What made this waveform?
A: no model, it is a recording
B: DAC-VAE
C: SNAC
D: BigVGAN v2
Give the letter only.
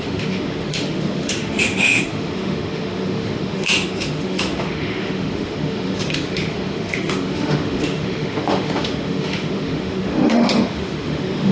B